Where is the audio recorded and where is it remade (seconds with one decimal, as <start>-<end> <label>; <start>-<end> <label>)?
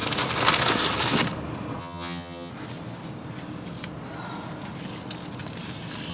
0.0-1.8 recorded; 1.8-2.5 remade; 2.5-6.1 recorded